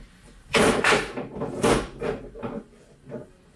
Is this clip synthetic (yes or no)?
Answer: no